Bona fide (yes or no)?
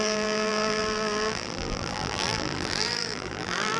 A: no